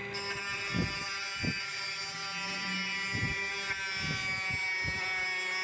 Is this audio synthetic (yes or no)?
no